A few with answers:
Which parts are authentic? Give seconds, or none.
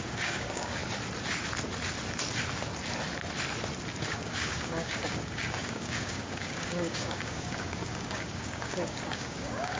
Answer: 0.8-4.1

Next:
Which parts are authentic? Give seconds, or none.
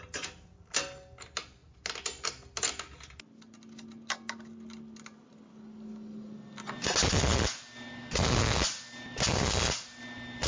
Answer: 0.0-10.5